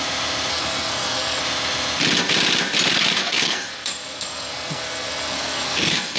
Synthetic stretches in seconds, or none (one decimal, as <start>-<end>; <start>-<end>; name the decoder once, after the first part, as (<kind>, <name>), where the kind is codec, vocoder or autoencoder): 0.5-1.4 (codec, SNAC); 3.2-6.2